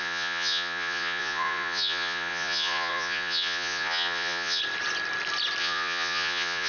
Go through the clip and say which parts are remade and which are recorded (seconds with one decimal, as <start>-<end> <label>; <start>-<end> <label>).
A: 0.0-4.6 remade; 4.6-5.6 recorded; 5.6-6.7 remade